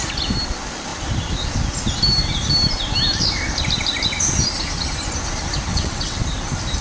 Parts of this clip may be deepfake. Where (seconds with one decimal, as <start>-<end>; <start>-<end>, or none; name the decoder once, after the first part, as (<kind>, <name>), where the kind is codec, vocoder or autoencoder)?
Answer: 5.7-6.2 (vocoder, WaveNeXt)